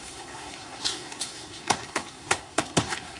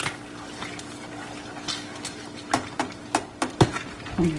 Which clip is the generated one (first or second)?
first